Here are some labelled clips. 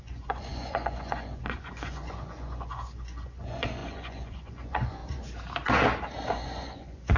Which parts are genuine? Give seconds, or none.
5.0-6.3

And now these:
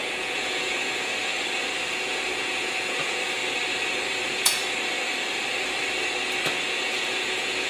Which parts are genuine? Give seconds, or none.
1.1-1.9; 3.4-4.1; 4.6-6.7

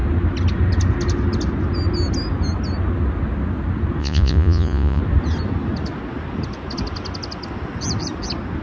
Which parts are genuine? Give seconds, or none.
0.0-4.0; 5.0-8.6

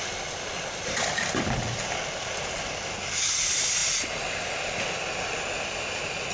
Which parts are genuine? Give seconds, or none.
0.0-6.3

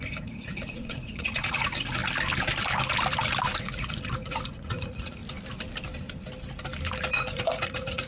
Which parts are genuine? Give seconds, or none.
2.0-3.6; 5.2-7.1

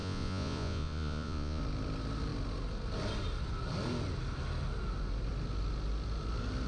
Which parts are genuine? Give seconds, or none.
1.6-6.7

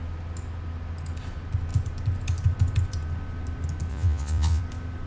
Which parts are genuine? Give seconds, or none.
0.0-3.9; 4.6-5.1